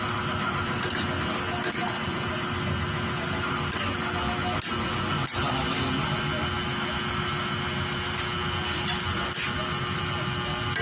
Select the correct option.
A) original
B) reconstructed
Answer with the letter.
A